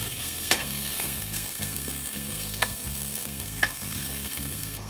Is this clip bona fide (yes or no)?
no